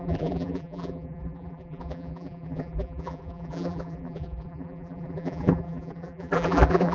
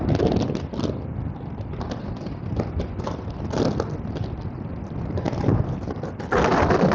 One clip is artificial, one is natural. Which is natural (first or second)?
second